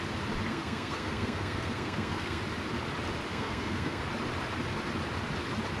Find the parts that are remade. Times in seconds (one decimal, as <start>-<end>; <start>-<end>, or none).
0.5-2.4; 3.3-4.0